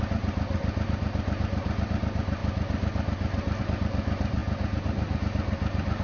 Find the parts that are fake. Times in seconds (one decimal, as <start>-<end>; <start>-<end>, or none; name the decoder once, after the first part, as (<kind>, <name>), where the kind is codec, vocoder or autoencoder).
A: none